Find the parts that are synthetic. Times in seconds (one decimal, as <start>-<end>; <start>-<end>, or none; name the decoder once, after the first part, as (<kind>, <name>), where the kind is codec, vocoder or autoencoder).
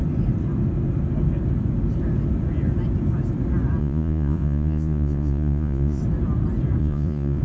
3.8-6.0 (vocoder, Vocos); 6.8-7.4